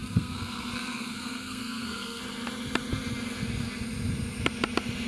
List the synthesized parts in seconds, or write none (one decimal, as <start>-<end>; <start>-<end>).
0.0-2.2